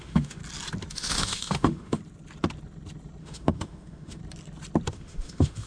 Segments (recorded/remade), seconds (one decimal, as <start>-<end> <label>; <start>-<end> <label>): 0.0-0.4 remade; 0.4-0.9 recorded; 0.9-2.0 remade; 2.0-3.2 recorded; 3.2-4.2 remade; 4.2-4.9 recorded; 4.9-5.7 remade